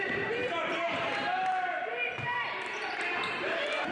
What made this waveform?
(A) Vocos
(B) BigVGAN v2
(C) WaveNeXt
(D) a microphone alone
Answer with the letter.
B